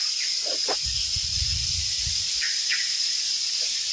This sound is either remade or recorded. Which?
recorded